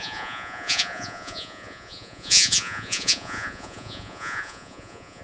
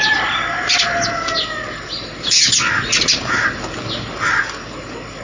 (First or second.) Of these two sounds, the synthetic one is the first